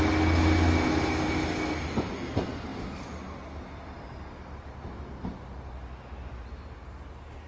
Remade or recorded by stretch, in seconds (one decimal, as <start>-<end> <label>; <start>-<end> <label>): 0.0-7.5 recorded